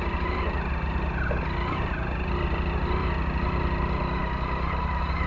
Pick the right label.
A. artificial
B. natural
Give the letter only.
B